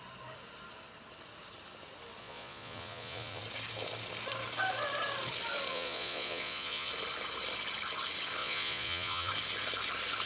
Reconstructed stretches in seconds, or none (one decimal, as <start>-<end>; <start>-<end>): 2.2-3.4; 5.7-6.9; 8.4-9.3